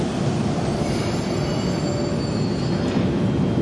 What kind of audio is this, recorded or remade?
recorded